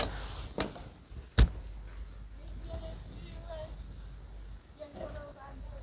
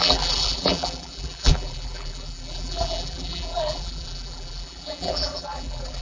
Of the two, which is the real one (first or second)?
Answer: first